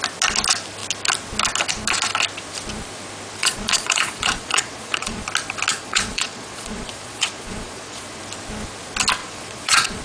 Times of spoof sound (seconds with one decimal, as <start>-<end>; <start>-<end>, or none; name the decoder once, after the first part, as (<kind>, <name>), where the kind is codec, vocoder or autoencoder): 3.4-5.2 (vocoder, Vocos); 5.7-8.2; 9.2-10.0